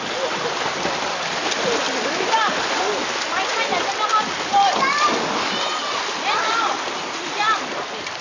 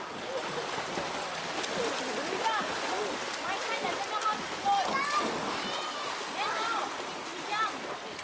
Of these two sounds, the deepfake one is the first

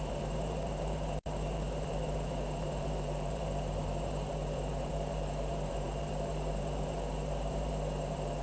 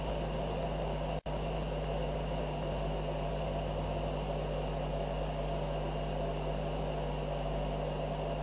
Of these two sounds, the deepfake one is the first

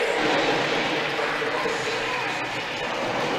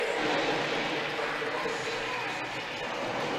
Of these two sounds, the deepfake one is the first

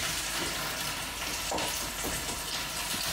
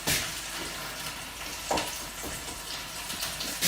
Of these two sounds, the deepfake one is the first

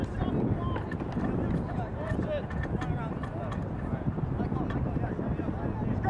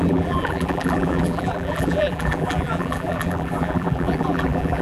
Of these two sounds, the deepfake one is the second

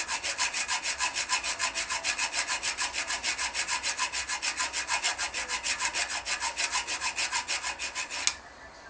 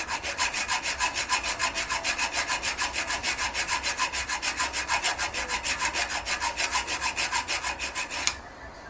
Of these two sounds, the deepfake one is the second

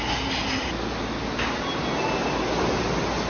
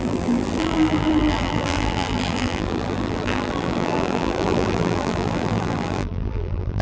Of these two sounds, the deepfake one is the second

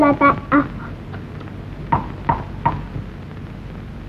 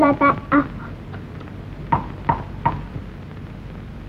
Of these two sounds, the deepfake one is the second